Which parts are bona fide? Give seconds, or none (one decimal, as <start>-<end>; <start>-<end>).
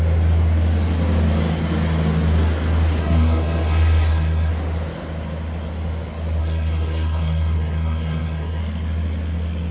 0.0-3.0; 4.5-6.4; 8.6-9.7